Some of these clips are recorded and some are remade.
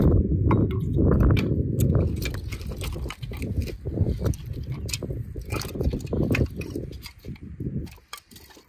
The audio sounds remade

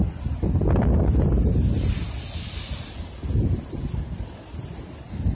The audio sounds recorded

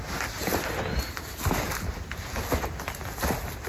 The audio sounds recorded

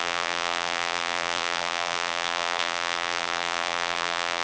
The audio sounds remade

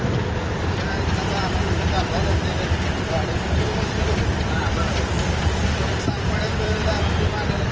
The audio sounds remade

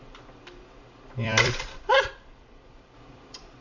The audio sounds remade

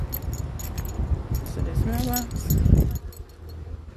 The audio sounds recorded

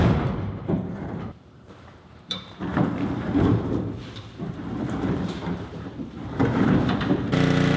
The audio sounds remade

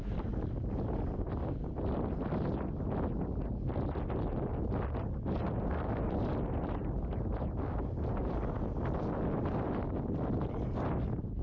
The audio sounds recorded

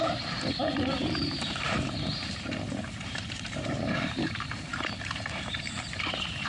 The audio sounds remade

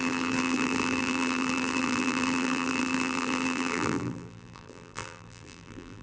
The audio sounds remade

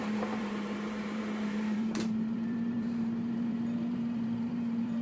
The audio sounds remade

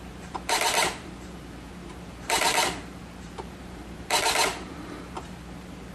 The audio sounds remade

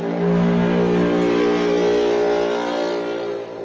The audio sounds recorded